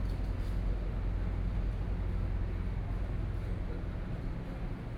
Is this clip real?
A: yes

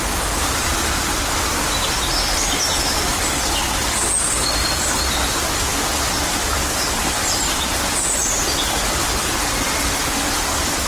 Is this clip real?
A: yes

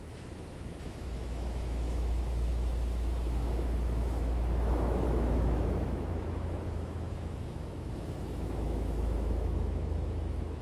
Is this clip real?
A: no